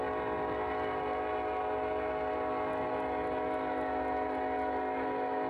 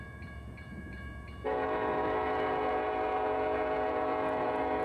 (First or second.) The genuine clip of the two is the first